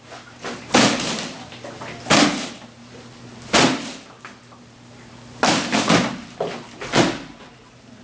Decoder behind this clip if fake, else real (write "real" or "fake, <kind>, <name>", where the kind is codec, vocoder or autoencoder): real